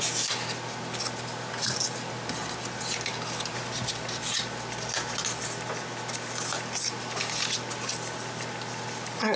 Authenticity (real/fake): real